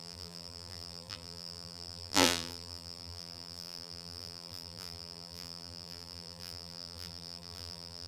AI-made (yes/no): yes